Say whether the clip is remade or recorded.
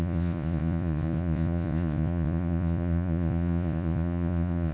remade